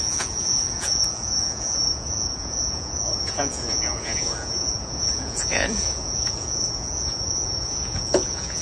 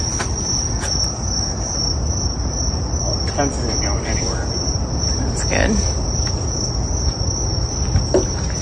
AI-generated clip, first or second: first